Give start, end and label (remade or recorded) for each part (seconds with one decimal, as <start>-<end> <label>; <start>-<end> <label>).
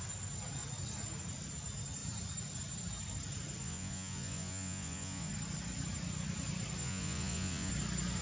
0.0-3.6 recorded; 3.6-5.3 remade; 5.3-6.8 recorded; 6.8-7.7 remade; 7.7-8.2 recorded